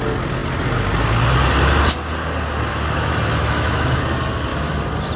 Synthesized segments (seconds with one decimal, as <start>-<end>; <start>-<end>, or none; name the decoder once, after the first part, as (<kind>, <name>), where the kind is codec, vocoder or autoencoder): 2.7-4.0 (autoencoder, DAC-VAE)